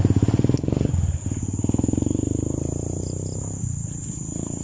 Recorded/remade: recorded